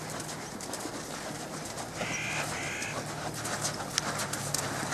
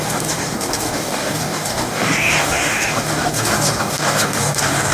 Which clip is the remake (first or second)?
second